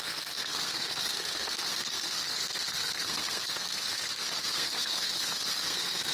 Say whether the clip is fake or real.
fake